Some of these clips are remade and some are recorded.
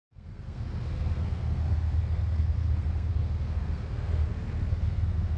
remade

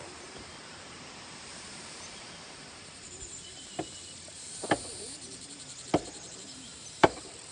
remade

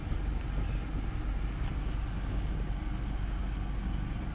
recorded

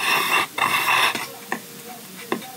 recorded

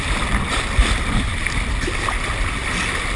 remade